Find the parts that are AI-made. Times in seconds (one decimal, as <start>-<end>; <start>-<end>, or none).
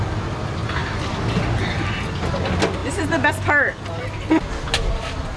none